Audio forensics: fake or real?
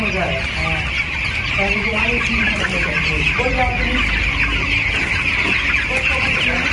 real